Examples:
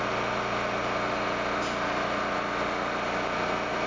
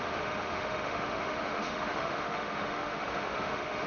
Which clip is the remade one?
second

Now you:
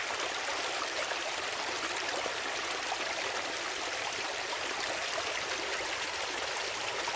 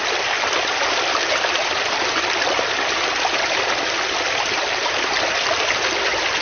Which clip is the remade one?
first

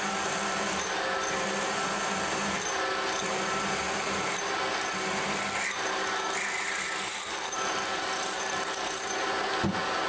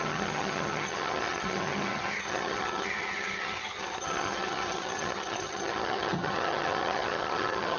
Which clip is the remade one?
second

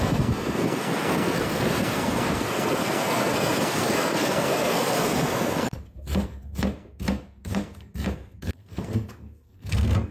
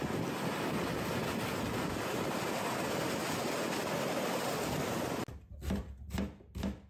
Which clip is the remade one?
first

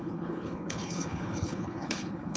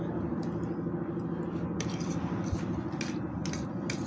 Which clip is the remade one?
first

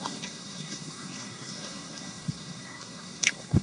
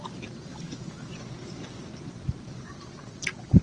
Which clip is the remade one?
first